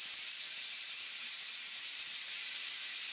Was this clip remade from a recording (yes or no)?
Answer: no